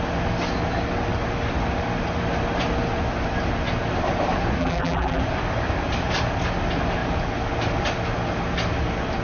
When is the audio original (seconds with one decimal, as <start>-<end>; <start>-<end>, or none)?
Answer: 0.0-4.6; 5.2-9.2